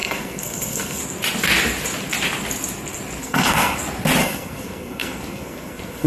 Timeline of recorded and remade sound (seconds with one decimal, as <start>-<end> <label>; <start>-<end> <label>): 0.0-1.0 remade; 1.0-3.2 recorded; 3.2-3.8 remade; 3.8-4.2 recorded; 4.2-6.1 remade